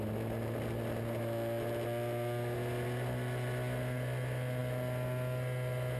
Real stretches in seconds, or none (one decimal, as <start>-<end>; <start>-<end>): 0.0-6.0